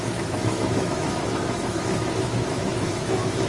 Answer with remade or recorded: remade